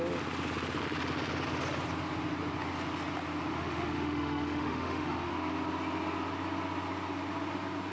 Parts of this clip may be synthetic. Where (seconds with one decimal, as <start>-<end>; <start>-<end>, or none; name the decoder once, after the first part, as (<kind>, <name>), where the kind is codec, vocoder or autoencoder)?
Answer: 3.5-5.3 (autoencoder, DAC-VAE)